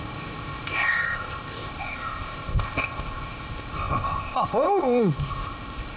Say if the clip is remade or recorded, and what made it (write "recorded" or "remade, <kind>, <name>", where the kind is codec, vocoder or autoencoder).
remade, codec, ZipCodec